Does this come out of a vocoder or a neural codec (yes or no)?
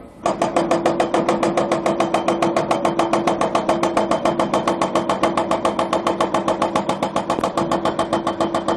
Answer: no